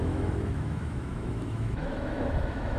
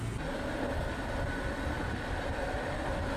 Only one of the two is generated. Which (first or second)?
first